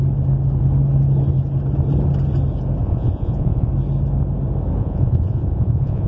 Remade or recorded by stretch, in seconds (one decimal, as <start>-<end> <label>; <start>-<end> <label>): 0.0-2.8 recorded; 2.8-3.7 remade; 3.7-4.8 recorded; 4.8-6.1 remade